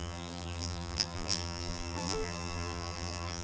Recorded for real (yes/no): no